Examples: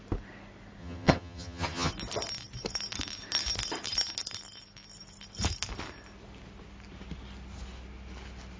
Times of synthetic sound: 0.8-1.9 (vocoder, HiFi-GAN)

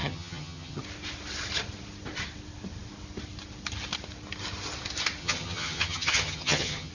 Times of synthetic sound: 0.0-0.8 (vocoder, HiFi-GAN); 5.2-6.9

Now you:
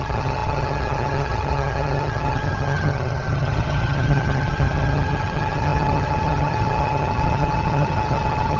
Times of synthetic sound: 0.0-8.6 (vocoder, HiFi-GAN)

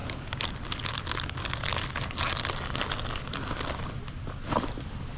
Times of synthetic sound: none